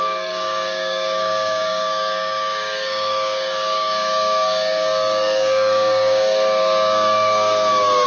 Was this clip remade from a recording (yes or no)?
yes